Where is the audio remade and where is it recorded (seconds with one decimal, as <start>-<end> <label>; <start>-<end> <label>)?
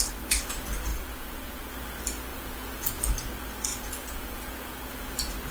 0.0-0.9 recorded; 0.9-1.7 remade; 1.7-2.3 recorded; 2.3-3.0 remade; 3.0-3.7 recorded; 3.7-5.0 remade; 5.0-5.5 recorded